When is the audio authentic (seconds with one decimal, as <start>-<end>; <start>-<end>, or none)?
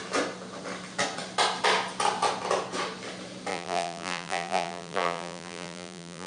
0.0-3.5